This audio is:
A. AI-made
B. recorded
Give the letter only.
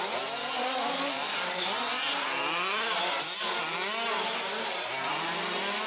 B